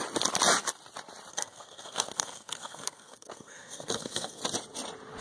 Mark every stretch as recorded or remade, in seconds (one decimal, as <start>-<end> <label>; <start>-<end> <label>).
0.0-1.3 recorded; 1.3-4.4 remade; 4.4-5.2 recorded